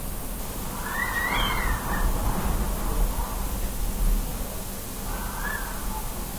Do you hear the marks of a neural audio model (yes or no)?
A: no